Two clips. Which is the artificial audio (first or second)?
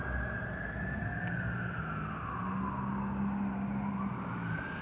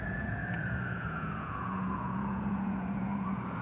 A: second